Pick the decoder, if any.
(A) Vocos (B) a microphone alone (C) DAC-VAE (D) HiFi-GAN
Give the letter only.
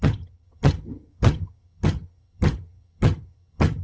D